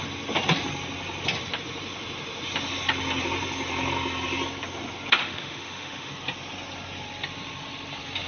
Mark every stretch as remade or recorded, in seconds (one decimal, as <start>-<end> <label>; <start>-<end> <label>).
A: 0.0-5.2 recorded; 5.2-6.1 remade; 6.1-8.3 recorded